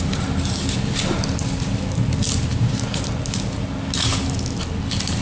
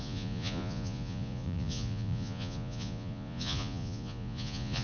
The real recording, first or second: first